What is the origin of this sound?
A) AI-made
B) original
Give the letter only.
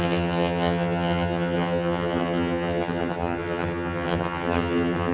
A